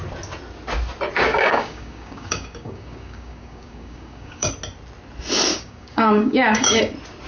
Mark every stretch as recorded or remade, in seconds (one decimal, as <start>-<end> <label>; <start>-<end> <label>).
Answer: 0.0-1.3 recorded; 1.3-4.5 remade; 4.5-5.5 recorded; 5.5-6.8 remade; 6.8-7.3 recorded